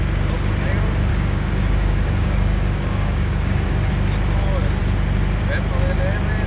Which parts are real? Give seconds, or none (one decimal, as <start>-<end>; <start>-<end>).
0.0-1.1; 3.9-6.5